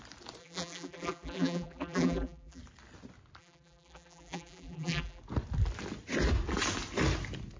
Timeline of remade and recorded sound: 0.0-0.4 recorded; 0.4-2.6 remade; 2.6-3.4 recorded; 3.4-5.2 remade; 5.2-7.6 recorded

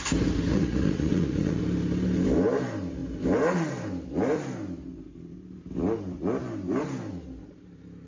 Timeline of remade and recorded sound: 0.0-0.5 recorded; 0.5-1.6 remade; 1.6-8.1 recorded

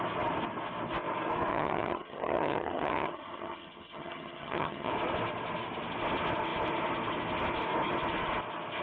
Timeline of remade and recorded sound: 0.0-1.5 recorded; 1.5-4.9 remade; 4.9-8.8 recorded

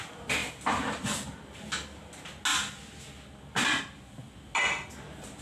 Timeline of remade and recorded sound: 0.0-0.4 recorded; 0.4-1.0 remade; 1.0-5.4 recorded